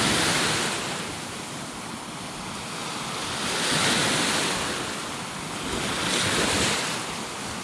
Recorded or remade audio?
recorded